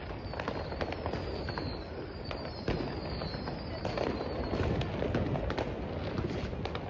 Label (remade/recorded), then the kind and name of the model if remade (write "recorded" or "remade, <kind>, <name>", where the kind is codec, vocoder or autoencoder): recorded